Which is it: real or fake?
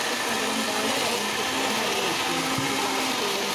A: real